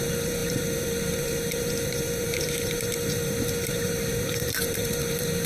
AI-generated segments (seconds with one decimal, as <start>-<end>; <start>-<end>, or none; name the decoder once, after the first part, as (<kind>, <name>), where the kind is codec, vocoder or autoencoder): 0.0-5.5 (vocoder, BigVGAN v2)